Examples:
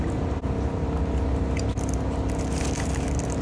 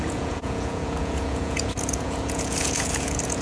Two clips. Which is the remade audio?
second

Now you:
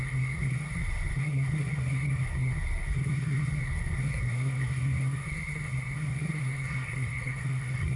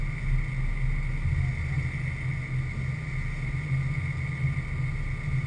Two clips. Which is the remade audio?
first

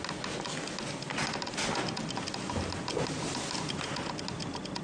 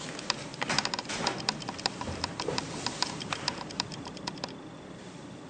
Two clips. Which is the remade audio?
second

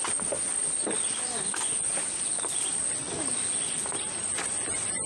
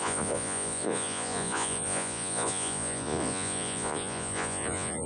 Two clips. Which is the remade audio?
second